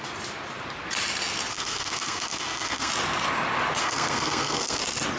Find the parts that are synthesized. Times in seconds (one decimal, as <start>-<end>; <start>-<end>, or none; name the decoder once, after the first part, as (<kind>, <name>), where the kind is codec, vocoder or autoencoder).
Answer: 1.5-2.9 (codec, SNAC); 3.8-4.8

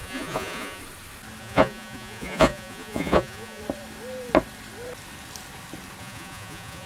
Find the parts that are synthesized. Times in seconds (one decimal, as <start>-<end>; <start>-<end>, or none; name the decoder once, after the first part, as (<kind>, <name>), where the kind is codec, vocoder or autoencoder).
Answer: 0.0-0.8 (vocoder, Vocos); 1.4-3.6; 6.0-6.9

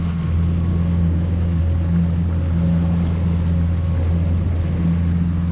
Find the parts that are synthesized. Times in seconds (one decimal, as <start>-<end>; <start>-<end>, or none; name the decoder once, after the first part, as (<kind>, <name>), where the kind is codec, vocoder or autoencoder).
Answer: 0.7-1.6 (codec, DAC)